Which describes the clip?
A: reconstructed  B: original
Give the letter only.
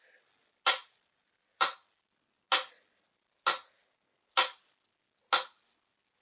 B